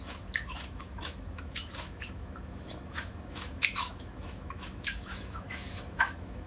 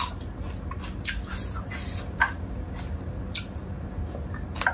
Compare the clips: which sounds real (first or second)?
second